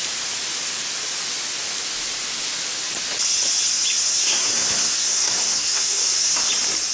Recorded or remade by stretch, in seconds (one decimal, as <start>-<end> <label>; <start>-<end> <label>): 0.0-4.1 recorded; 4.1-6.5 remade; 6.5-6.9 recorded